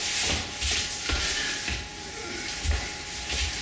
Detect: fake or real real